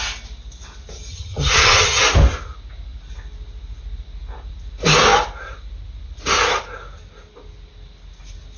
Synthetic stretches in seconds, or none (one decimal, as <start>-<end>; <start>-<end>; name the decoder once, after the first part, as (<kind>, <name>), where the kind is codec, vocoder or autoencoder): 1.1-2.0 (vocoder, HiFi-GAN)